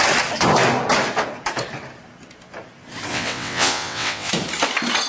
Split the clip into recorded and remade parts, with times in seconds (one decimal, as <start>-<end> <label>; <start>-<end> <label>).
0.0-3.1 recorded; 3.1-4.3 remade; 4.3-5.1 recorded